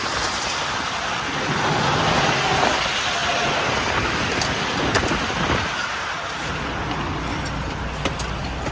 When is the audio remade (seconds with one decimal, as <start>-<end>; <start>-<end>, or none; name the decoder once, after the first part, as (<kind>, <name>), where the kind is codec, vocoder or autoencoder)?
none